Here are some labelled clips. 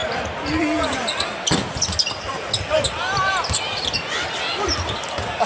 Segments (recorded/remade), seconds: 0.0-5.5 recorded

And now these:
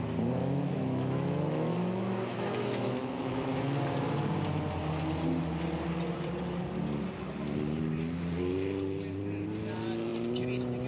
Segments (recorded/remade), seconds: 0.0-0.4 recorded; 0.4-3.8 remade; 3.8-10.9 recorded

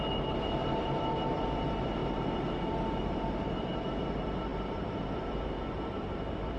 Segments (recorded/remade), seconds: 0.0-6.6 remade

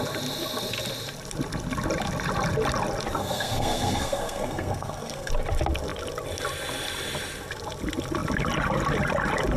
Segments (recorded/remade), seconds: 0.0-3.2 recorded; 3.2-5.3 remade; 5.3-9.6 recorded